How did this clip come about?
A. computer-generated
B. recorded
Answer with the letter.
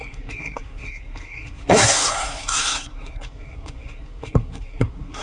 A